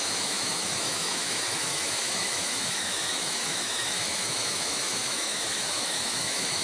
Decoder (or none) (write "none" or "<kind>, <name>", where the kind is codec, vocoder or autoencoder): autoencoder, DAC-VAE